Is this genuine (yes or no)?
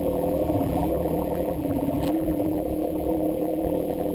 no